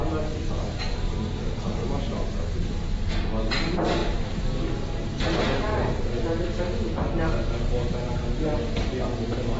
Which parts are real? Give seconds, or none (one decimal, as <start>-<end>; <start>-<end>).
0.0-1.8; 3.1-5.7; 6.6-9.6